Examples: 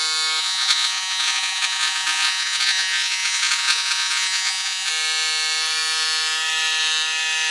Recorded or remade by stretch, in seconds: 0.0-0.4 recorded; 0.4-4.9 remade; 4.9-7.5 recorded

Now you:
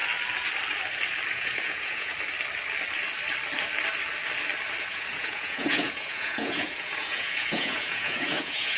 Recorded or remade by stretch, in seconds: 0.0-1.3 recorded; 1.3-2.1 remade; 2.1-4.8 recorded; 4.8-8.8 remade

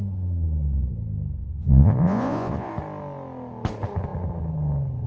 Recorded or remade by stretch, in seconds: 0.0-1.4 recorded; 1.4-2.7 remade; 2.7-5.1 recorded